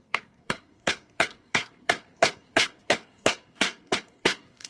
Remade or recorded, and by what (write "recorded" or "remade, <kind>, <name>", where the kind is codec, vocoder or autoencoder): remade, codec, SNAC